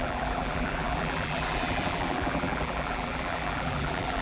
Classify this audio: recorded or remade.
remade